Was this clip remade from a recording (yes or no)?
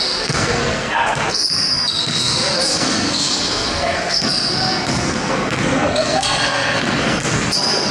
yes